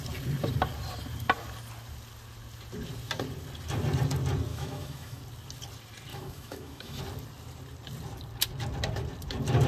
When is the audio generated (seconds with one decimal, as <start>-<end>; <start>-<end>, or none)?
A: 4.5-5.2; 6.1-7.0